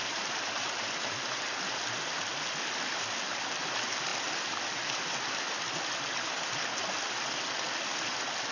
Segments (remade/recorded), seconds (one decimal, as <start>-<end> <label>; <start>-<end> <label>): 0.0-0.7 remade; 0.7-8.5 recorded